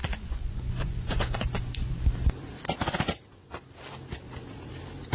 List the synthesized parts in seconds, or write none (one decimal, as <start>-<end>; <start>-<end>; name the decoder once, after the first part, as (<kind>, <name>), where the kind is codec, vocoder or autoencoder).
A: 0.0-1.9 (vocoder, Vocos)